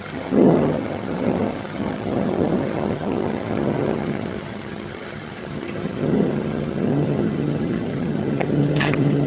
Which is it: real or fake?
fake